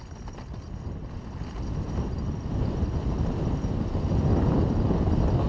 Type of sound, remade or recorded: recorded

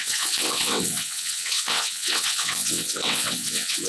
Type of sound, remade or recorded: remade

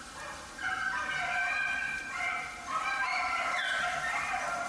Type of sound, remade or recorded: recorded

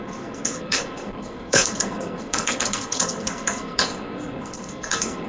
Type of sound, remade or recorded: remade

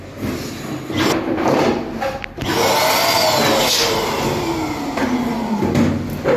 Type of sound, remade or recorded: recorded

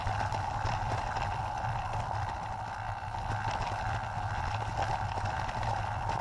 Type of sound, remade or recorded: remade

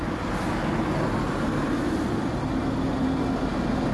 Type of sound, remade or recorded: recorded